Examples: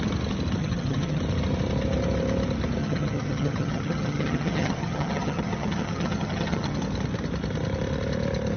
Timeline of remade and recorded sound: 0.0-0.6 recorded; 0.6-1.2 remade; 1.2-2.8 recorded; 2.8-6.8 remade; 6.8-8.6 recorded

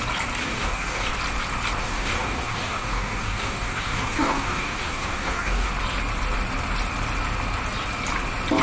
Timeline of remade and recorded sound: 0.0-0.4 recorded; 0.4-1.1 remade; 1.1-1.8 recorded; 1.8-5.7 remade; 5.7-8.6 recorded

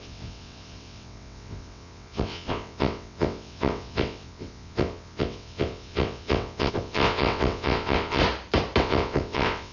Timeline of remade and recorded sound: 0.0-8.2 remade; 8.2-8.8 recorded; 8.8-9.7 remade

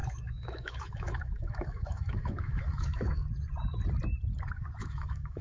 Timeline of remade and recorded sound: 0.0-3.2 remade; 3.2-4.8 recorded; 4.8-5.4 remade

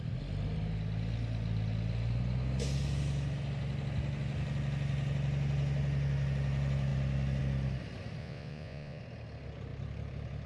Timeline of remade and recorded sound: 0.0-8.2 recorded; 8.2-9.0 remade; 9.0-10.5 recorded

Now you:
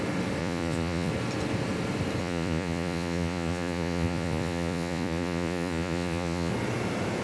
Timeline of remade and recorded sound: 0.0-0.4 recorded; 0.4-1.1 remade; 1.1-2.2 recorded; 2.2-6.5 remade; 6.5-7.2 recorded